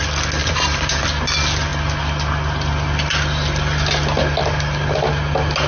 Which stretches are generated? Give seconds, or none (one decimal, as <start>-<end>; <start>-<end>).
0.4-1.0